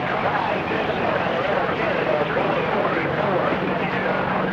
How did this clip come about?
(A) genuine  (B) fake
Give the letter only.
A